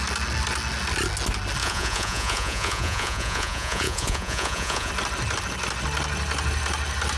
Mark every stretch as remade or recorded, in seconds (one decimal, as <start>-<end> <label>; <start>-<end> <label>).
0.0-1.6 recorded; 1.6-4.9 remade; 4.9-7.2 recorded

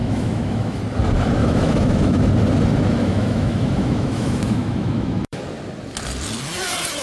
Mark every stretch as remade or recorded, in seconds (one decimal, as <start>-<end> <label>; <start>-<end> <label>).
0.0-0.8 remade; 0.8-1.4 recorded; 1.4-2.3 remade; 2.3-3.0 recorded; 3.0-5.4 remade; 5.4-7.0 recorded

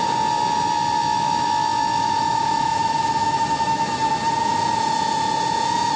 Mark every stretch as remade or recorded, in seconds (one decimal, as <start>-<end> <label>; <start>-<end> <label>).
0.0-1.0 recorded; 1.0-3.9 remade; 3.9-6.0 recorded